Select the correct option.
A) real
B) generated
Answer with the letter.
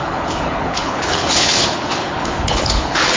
B